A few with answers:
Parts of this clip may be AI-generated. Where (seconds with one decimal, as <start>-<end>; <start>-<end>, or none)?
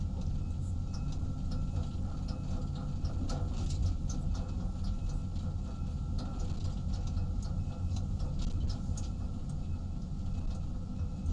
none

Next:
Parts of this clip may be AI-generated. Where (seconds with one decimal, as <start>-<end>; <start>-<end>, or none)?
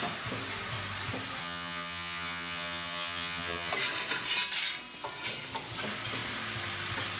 1.4-3.7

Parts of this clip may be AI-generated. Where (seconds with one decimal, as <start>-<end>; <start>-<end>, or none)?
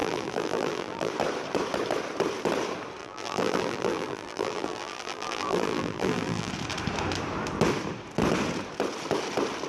0.0-1.1; 3.0-6.5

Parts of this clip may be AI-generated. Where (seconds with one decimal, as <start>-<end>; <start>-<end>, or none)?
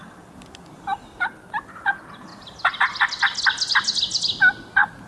2.3-3.4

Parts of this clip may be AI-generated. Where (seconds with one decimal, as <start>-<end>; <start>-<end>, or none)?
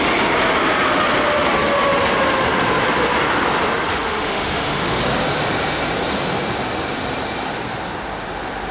3.9-5.0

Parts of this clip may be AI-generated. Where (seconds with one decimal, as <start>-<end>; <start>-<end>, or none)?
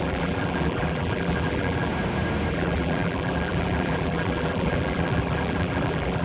0.0-1.9; 2.5-6.2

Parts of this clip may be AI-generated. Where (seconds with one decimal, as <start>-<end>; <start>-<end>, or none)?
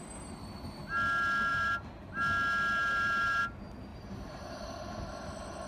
1.5-2.1; 2.8-3.4; 3.9-4.5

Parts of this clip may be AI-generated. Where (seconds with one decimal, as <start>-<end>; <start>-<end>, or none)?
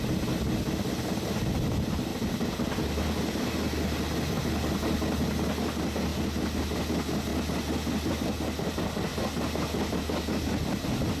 none